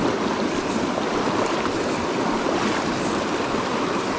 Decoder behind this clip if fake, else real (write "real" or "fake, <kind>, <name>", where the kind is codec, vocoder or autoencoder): real